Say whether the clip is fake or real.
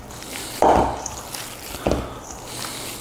real